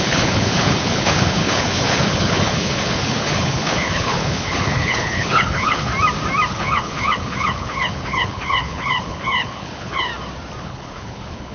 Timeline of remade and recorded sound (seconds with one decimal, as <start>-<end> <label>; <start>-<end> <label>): 0.0-5.9 remade; 5.9-6.5 recorded; 6.5-10.1 remade; 10.1-10.6 recorded; 10.6-11.5 remade